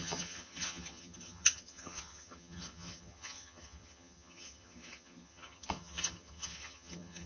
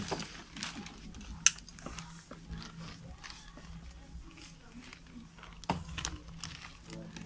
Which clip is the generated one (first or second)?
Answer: first